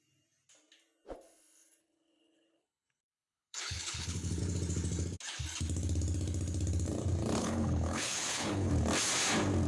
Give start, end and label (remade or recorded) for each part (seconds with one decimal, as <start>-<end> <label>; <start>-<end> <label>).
0.0-1.8 recorded; 1.8-4.4 remade; 4.4-7.4 recorded; 7.4-8.7 remade; 8.7-9.7 recorded